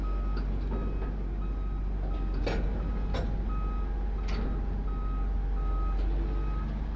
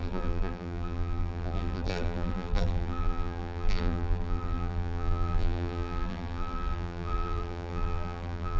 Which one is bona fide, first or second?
first